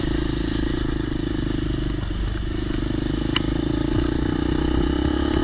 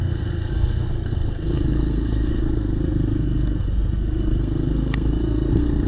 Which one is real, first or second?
first